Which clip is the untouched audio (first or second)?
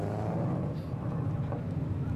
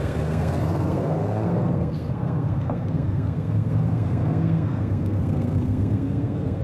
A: first